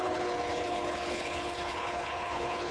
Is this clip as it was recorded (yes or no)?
no